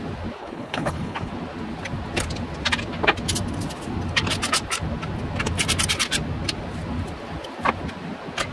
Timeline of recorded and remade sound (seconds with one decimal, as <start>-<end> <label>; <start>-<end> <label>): 0.0-0.4 recorded; 0.4-1.3 remade; 1.3-8.5 recorded